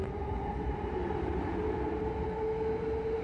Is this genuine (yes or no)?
yes